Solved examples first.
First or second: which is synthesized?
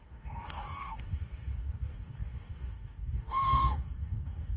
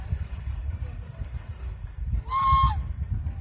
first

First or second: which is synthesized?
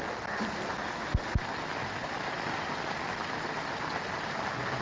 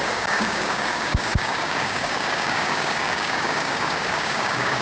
second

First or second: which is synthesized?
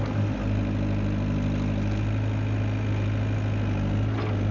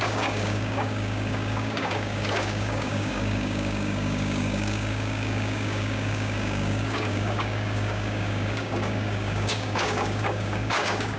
second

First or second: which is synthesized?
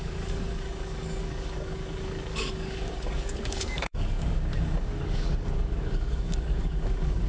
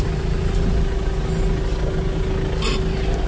first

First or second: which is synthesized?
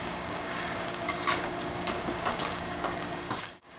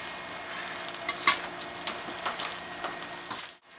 first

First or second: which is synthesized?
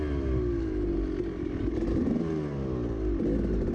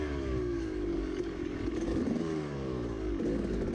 second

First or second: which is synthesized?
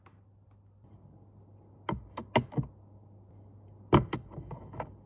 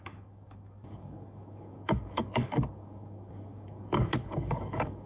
second